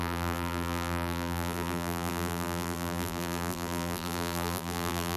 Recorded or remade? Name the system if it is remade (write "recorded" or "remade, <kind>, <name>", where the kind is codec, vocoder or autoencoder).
remade, vocoder, BigVGAN v2